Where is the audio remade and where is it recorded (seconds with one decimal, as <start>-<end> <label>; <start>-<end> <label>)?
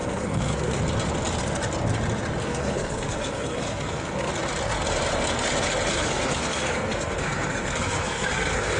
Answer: 0.0-0.8 remade; 0.8-2.4 recorded; 2.4-4.3 remade; 4.3-5.9 recorded; 5.9-8.8 remade